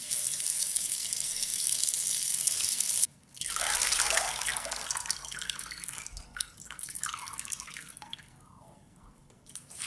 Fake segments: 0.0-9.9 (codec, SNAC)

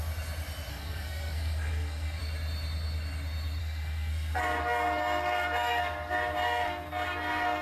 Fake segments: 0.7-2.2 (codec, SNAC); 3.6-7.6

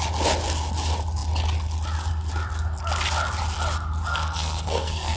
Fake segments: 4.1-5.2 (codec, SNAC)

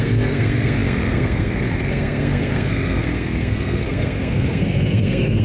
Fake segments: 0.0-5.4 (codec, SNAC)

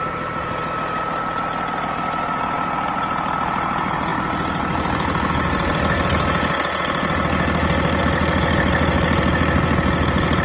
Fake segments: none

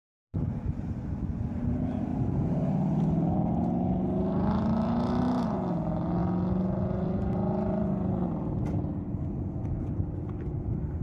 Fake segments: none

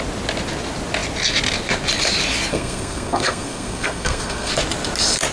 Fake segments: 2.5-4.5 (codec, SNAC)

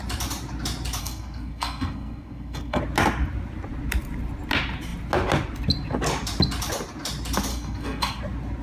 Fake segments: 1.0-2.8 (codec, SNAC); 7.5-8.2